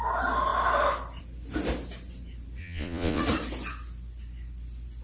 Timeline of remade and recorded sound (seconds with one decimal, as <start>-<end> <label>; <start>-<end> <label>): 0.0-2.6 recorded; 2.6-3.2 remade; 3.2-5.0 recorded